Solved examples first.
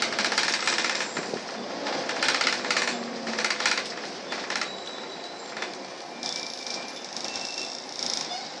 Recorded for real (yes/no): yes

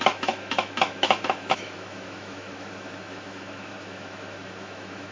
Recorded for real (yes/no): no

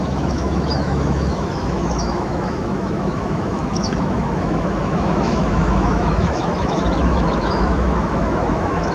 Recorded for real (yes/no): no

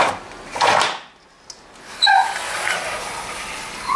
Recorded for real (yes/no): yes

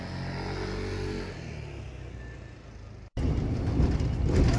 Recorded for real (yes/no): yes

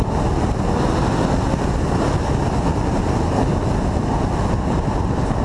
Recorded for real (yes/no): yes